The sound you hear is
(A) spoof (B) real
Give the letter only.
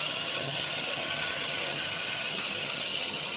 A